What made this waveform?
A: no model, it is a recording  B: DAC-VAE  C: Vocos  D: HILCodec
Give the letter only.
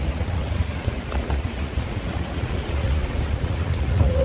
C